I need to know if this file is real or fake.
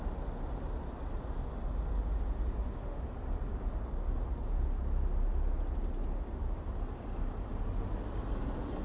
real